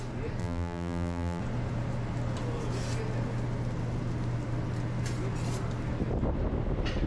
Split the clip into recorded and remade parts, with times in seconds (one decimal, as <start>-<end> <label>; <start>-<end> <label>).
0.0-0.4 recorded; 0.4-1.4 remade; 1.4-7.1 recorded